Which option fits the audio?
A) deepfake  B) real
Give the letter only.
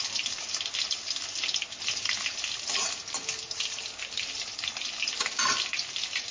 B